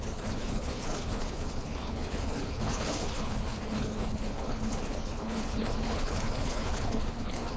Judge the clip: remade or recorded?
remade